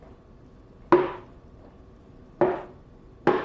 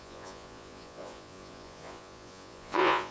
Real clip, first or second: first